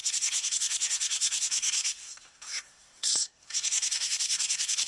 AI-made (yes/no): yes